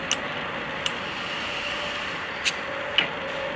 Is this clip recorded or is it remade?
recorded